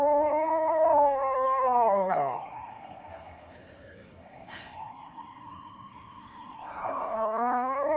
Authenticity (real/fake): fake